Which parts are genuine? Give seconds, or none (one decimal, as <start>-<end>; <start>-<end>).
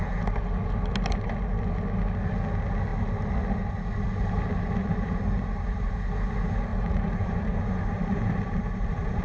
0.0-4.8; 5.9-6.7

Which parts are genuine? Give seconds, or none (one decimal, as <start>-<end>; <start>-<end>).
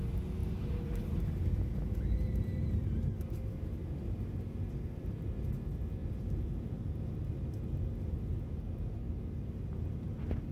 0.0-0.4; 1.8-6.0; 7.0-10.5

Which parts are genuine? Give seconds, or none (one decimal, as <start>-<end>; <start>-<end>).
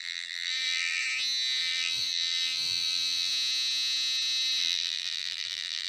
1.0-1.6; 3.3-4.6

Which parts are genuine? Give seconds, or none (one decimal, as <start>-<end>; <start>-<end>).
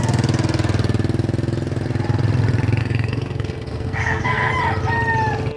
0.0-2.8; 4.5-5.6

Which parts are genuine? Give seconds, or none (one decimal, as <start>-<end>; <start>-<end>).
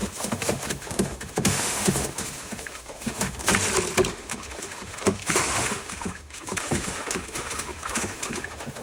3.5-4.1